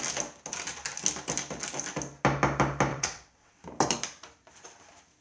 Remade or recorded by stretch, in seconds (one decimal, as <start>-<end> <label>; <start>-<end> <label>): 0.0-2.9 recorded; 2.9-3.6 remade; 3.6-5.2 recorded